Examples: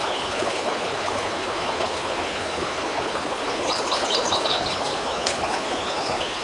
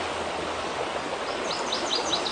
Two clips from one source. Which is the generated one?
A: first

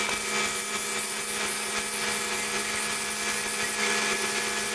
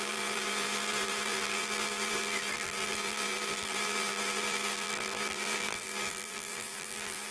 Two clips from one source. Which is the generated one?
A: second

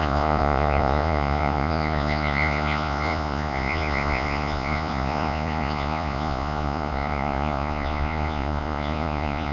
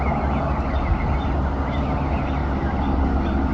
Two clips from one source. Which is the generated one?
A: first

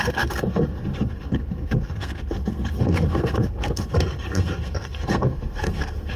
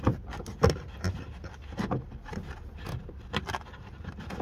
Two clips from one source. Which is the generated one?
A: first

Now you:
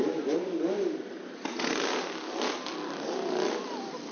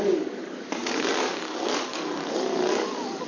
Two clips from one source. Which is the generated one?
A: second